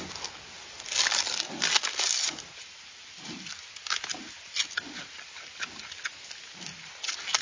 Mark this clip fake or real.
real